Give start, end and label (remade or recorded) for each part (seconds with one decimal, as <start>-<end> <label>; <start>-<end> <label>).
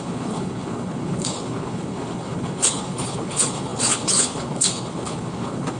0.0-5.8 remade